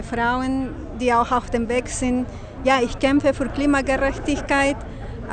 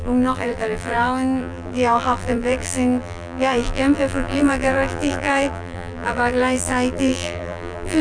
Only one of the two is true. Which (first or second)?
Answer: first